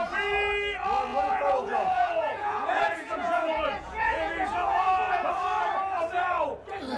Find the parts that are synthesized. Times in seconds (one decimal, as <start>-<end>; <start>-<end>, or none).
1.1-5.3